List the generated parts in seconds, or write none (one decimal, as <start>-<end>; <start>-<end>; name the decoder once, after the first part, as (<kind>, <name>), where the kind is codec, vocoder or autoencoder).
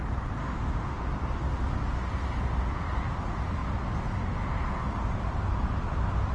0.4-1.1 (autoencoder, DAC-VAE)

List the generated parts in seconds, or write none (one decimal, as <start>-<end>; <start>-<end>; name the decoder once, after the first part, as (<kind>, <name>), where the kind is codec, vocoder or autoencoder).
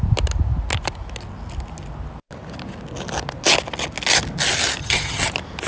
4.8-5.3 (vocoder, HiFi-GAN)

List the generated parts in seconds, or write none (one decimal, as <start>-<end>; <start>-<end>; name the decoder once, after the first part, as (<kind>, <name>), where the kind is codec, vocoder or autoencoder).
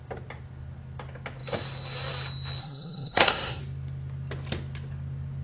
2.6-3.6 (codec, SNAC)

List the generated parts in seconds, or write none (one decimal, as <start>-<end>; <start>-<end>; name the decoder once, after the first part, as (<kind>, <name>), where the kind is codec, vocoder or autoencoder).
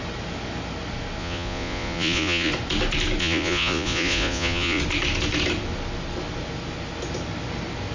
1.2-2.5 (vocoder, Vocos); 3.2-4.8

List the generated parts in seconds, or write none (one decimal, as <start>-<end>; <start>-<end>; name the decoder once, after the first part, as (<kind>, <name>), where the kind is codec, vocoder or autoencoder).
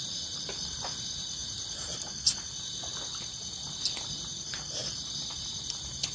none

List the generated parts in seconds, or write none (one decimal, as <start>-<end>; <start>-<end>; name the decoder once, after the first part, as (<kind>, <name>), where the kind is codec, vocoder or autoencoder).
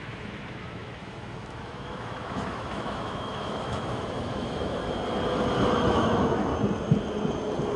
0.0-4.8 (autoencoder, DAC-VAE); 5.7-6.5